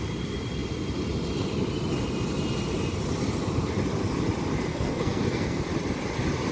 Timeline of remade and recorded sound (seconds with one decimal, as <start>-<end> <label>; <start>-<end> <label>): 0.0-4.7 recorded; 4.7-5.6 remade; 5.6-6.5 recorded